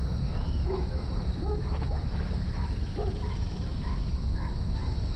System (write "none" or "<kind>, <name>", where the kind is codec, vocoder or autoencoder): autoencoder, DAC-VAE